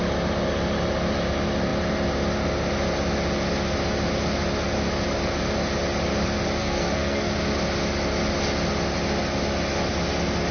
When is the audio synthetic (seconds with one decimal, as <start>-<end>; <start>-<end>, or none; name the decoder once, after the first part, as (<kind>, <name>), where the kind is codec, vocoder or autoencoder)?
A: 6.6-7.3 (codec, SNAC)